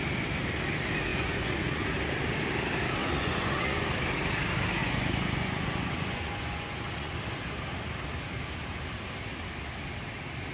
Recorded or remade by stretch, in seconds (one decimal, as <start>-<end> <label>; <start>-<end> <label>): 0.0-1.1 recorded; 1.1-1.8 remade; 1.8-3.0 recorded; 3.0-3.8 remade; 3.8-4.8 recorded; 4.8-7.2 remade; 7.2-10.5 recorded